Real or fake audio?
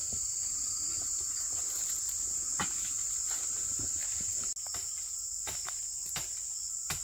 real